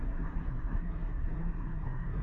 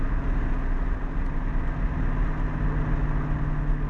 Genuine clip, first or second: second